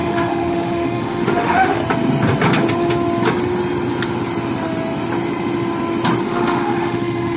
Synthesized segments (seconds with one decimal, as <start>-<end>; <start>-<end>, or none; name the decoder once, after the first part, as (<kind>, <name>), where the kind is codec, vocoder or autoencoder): 0.0-1.8 (autoencoder, DAC-VAE); 6.2-7.4

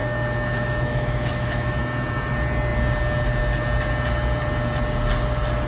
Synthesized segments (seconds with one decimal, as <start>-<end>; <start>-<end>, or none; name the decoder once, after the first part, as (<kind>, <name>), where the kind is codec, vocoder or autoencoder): 0.0-1.8 (autoencoder, DAC-VAE)

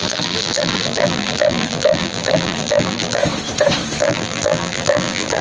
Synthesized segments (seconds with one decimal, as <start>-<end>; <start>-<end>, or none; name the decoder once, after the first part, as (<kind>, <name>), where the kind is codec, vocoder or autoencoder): 0.0-3.2 (vocoder, BigVGAN v2); 4.0-5.4

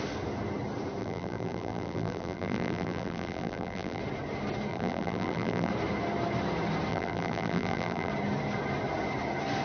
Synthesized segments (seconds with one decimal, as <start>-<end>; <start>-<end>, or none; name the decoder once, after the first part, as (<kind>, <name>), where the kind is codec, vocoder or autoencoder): 1.0-4.0 (vocoder, BigVGAN v2); 4.7-5.7; 6.9-8.1

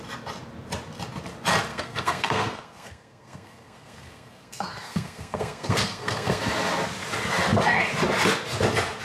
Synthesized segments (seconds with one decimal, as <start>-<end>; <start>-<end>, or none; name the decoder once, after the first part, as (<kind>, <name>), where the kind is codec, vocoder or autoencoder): 1.7-6.4 (codec, SNAC)

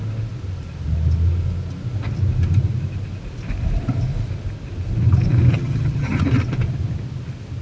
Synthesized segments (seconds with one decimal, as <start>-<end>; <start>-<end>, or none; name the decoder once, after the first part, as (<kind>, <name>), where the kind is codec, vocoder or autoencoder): 5.5-6.2 (vocoder, HiFi-GAN)

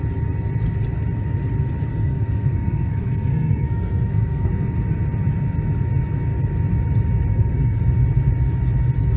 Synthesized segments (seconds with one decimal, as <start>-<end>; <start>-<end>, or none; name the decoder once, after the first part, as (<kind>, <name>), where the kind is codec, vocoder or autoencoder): 1.9-4.5 (codec, SNAC); 7.3-7.8

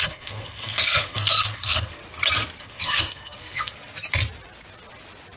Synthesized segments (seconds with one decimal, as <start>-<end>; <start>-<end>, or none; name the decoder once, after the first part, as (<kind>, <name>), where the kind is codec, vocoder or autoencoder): 0.0-2.0 (codec, SNAC); 2.6-3.8